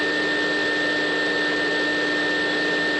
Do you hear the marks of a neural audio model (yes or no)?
no